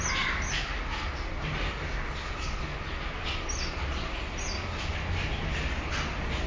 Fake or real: real